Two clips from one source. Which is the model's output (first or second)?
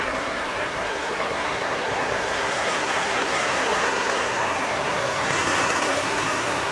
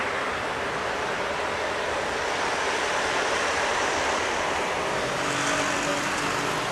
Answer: first